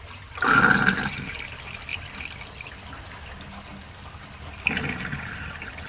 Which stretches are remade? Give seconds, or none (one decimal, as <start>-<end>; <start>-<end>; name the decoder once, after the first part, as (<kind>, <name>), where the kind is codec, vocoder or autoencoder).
none